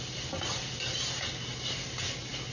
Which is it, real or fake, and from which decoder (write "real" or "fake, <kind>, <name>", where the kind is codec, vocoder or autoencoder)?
real